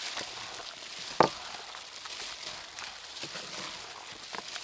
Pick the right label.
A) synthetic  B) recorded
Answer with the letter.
B